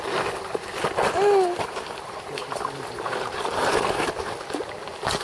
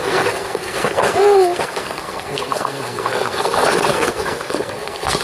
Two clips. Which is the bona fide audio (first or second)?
first